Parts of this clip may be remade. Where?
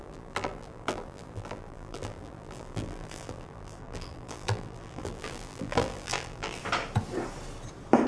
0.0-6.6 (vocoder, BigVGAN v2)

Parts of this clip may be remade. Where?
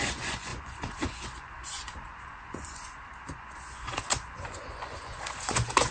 0.0-5.9 (vocoder, Vocos)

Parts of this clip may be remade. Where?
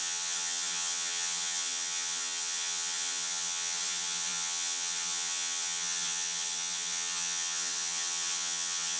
0.0-9.0 (vocoder, HiFi-GAN)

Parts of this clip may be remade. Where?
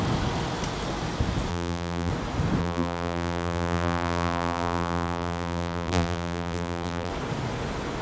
1.5-2.1 (vocoder, BigVGAN v2); 2.6-7.1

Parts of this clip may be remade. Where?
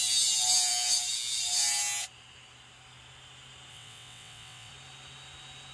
3.7-4.7 (vocoder, WaveNeXt)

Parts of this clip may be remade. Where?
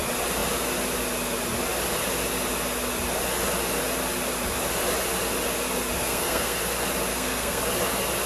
6.0-6.6 (codec, SNAC); 7.1-7.6